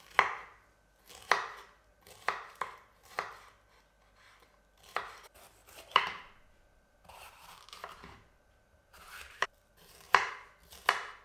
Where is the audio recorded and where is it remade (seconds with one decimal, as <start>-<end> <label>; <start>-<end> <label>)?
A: 0.0-1.9 recorded; 1.9-3.3 remade; 3.3-5.6 recorded; 5.6-10.3 remade; 10.3-11.2 recorded